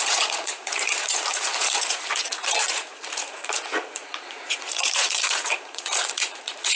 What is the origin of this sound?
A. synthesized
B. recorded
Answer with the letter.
A